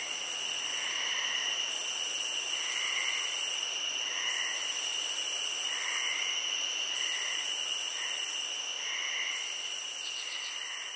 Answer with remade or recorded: recorded